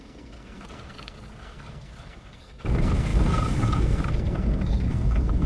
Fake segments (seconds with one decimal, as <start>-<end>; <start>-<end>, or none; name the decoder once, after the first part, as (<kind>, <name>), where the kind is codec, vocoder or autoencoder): 0.0-5.5 (codec, SNAC)